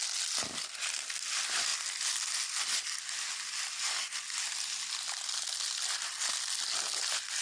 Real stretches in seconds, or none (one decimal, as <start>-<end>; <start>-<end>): 0.0-7.4